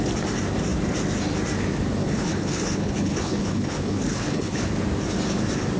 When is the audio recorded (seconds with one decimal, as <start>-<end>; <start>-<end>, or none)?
0.0-2.0; 4.7-5.8